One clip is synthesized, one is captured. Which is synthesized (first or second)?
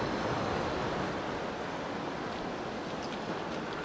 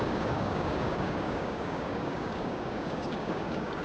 second